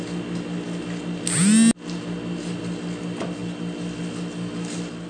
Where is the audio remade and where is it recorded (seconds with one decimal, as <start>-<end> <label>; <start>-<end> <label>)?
0.0-5.1 recorded